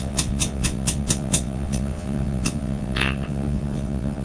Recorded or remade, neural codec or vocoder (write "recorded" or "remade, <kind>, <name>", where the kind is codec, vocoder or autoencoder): remade, vocoder, WaveNeXt